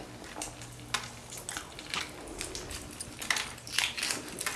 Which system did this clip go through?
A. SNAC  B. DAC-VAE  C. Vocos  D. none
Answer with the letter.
D